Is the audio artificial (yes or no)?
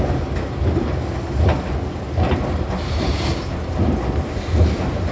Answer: no